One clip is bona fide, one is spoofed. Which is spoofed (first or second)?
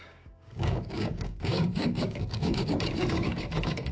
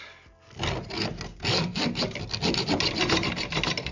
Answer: first